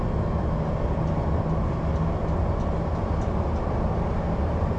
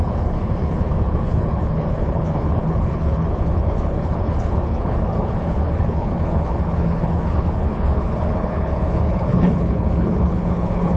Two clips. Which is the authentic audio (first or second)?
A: first